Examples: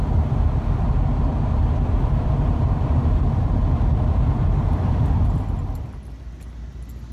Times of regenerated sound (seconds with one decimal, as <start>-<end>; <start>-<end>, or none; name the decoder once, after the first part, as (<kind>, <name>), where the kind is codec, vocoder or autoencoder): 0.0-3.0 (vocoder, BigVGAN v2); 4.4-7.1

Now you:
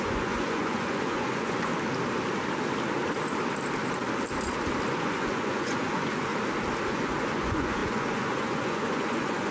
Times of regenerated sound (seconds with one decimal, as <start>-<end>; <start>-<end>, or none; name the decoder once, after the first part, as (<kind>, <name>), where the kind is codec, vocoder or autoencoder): 0.0-1.7 (vocoder, Vocos); 4.9-6.3; 6.9-9.5

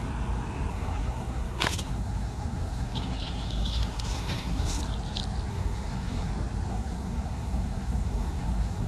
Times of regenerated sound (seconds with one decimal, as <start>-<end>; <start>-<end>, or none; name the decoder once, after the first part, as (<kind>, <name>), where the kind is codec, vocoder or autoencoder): 0.7-4.8 (codec, SNAC); 5.5-6.3; 6.7-8.9

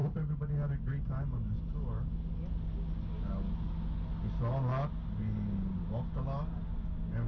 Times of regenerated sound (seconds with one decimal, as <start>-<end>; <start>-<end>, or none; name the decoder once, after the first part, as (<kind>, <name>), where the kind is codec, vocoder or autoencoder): none

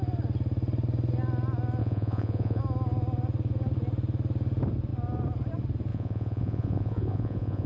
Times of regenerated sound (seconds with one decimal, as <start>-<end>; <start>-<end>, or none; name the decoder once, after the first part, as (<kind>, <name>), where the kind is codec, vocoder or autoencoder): 1.8-2.6 (vocoder, Vocos); 5.9-7.7

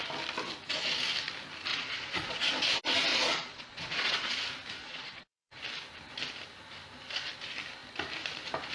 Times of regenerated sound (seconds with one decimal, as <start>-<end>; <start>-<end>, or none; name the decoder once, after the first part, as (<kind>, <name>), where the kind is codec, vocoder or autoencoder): 1.7-2.5 (vocoder, Vocos); 3.1-4.3; 4.8-5.6

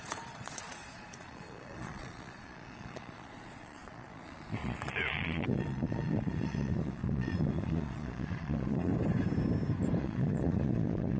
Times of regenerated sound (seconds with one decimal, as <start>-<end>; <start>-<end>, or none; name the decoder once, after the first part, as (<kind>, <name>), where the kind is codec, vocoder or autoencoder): 0.0-8.9 (vocoder, Vocos); 10.0-11.2